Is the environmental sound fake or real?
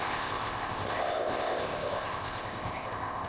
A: fake